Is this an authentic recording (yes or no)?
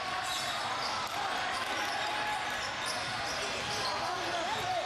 yes